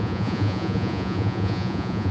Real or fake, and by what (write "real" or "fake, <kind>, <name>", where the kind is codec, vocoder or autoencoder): fake, vocoder, Vocos